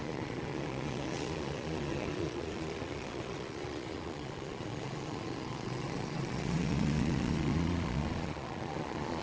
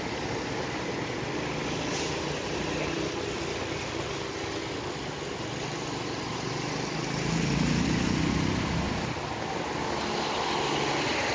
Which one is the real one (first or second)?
second